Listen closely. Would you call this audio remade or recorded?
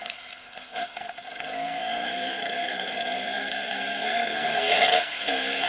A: remade